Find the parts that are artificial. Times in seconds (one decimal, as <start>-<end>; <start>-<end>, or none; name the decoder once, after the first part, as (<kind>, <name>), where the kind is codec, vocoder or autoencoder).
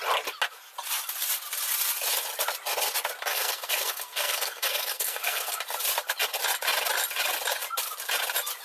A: 3.3-5.6 (codec, SNAC)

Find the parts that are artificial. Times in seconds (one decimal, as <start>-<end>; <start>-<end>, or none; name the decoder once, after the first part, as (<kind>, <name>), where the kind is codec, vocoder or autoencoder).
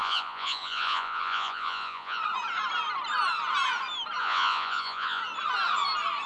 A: 0.0-2.2 (vocoder, Vocos); 4.2-5.2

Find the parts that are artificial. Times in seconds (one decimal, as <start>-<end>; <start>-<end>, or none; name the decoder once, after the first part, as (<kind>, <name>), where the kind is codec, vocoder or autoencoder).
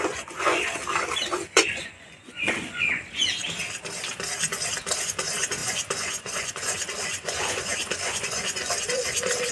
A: 0.0-0.8 (vocoder, Vocos); 1.5-3.0; 5.0-9.5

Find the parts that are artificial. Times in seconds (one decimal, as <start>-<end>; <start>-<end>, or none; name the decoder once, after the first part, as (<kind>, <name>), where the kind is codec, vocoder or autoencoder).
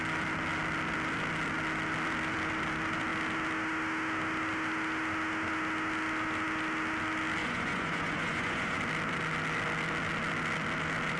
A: 7.4-8.8 (vocoder, Vocos)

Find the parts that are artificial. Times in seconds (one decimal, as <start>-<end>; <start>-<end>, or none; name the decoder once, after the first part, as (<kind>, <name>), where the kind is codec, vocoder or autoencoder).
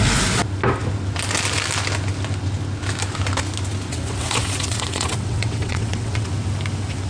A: 3.9-6.3 (vocoder, WaveNeXt)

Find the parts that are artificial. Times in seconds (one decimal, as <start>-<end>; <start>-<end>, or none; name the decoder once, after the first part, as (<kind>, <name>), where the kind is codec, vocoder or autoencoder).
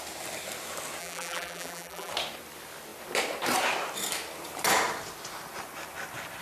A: 1.0-2.1 (vocoder, BigVGAN v2)